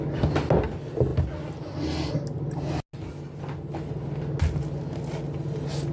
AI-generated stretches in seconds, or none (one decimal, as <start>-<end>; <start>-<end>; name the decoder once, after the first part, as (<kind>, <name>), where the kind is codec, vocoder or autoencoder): none